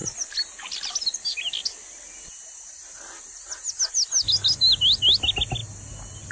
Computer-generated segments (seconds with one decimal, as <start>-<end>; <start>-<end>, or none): none